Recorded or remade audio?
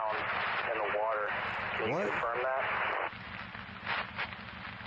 recorded